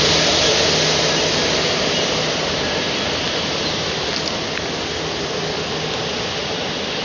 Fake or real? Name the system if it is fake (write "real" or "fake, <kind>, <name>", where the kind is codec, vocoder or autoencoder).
real